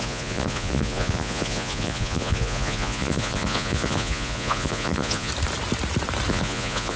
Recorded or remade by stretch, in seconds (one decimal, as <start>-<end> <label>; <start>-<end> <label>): 0.0-5.3 remade; 5.3-6.3 recorded; 6.3-7.0 remade